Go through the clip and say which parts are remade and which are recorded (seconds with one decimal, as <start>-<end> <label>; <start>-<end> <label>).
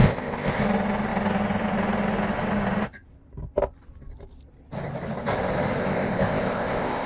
0.0-0.6 remade; 0.6-5.8 recorded; 5.8-7.1 remade